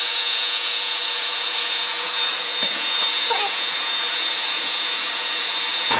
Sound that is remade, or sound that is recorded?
remade